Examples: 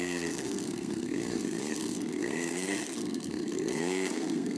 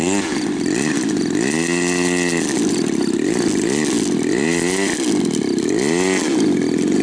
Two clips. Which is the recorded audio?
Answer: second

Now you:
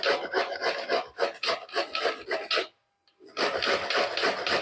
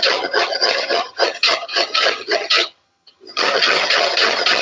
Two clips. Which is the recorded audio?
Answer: first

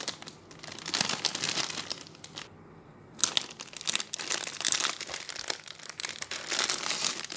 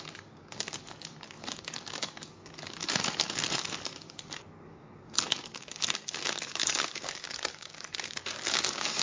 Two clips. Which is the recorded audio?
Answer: first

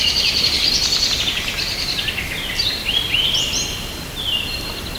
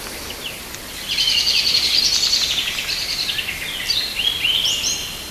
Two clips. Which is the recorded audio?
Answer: second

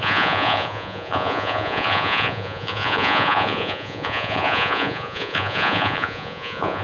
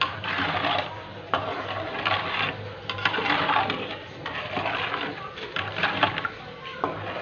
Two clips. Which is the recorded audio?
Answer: second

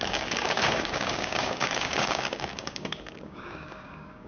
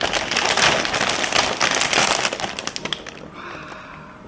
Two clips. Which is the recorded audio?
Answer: second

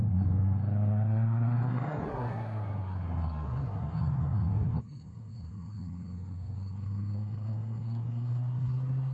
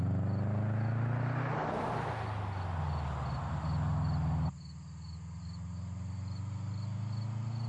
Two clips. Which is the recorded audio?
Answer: second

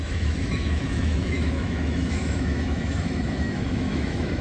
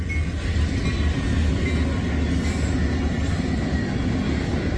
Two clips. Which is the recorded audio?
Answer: second